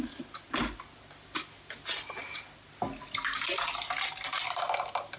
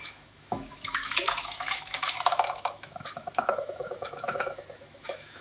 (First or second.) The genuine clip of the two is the first